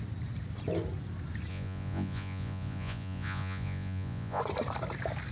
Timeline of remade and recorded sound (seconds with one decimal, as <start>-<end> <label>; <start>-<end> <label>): 0.0-1.5 recorded; 1.5-4.4 remade; 4.4-5.3 recorded